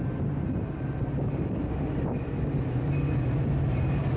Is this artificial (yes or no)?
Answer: no